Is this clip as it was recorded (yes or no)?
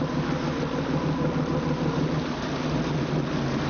yes